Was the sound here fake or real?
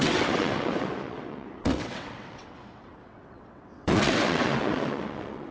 fake